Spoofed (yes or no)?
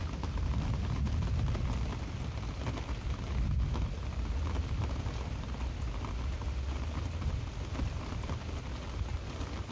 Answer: no